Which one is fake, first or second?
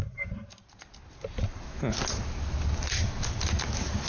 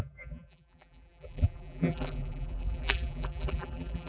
second